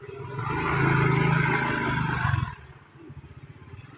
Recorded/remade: recorded